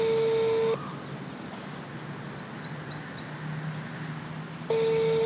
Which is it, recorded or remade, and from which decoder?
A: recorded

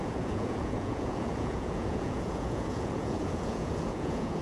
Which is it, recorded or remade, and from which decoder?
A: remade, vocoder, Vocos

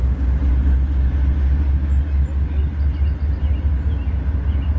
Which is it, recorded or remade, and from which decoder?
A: recorded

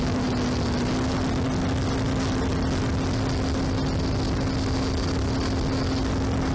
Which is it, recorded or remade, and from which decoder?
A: recorded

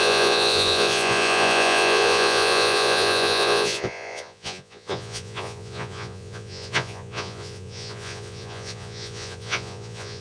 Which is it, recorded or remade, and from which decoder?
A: remade, vocoder, Vocos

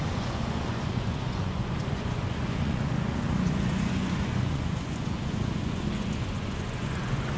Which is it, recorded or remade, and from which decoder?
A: remade, vocoder, Vocos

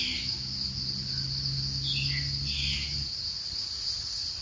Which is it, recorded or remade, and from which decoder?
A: recorded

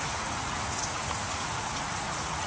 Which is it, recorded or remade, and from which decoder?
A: remade, vocoder, Vocos